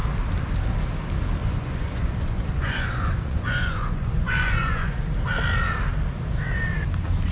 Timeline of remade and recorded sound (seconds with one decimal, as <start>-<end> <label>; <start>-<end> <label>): 0.0-1.4 recorded; 1.4-5.0 remade; 5.0-7.3 recorded